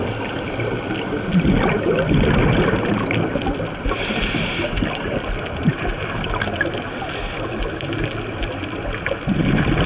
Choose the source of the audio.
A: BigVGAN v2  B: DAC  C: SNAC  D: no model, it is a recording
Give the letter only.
D